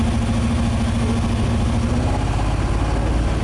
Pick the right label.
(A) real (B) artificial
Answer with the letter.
A